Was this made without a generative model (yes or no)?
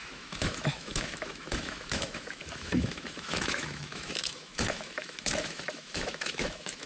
no